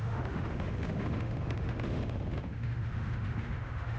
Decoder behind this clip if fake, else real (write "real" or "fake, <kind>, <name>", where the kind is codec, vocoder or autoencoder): fake, autoencoder, DAC-VAE